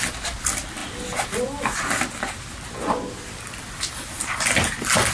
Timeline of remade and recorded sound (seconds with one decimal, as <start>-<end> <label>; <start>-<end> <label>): 0.0-5.1 recorded